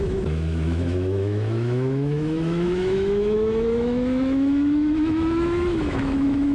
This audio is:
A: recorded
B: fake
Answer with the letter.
B